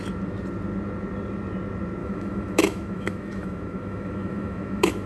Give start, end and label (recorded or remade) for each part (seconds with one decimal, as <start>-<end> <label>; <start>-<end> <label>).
0.0-2.0 recorded; 2.0-5.1 remade